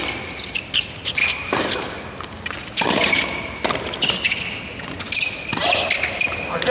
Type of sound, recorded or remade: recorded